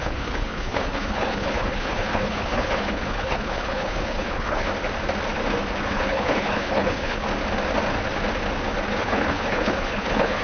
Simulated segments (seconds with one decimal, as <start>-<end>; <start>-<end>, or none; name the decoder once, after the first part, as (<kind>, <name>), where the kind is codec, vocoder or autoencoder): 0.0-4.7 (codec, HILCodec); 5.8-7.3; 9.0-10.4